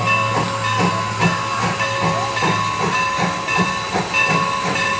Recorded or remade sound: recorded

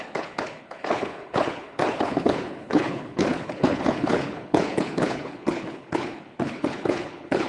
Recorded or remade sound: remade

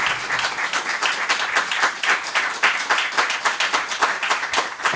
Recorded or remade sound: recorded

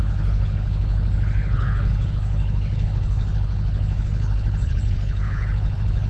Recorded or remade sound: remade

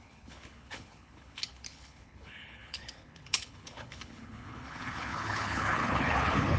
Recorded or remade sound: remade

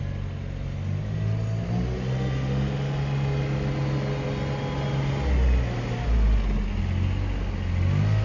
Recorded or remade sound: recorded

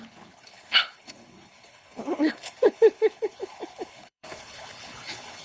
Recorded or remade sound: remade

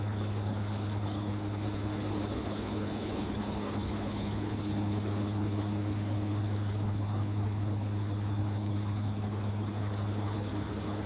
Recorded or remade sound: remade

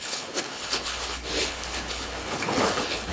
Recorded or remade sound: remade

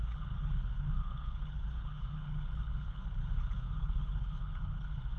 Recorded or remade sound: remade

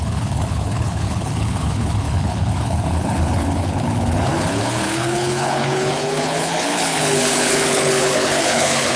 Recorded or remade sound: remade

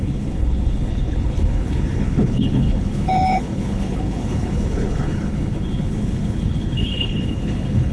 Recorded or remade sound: remade